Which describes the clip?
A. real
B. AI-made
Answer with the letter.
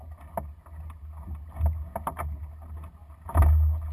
A